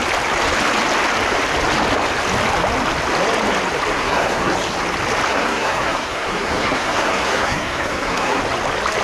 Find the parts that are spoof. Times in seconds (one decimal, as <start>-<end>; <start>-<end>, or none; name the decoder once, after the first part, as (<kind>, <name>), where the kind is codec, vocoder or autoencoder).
3.9-4.5 (codec, SNAC); 5.3-8.4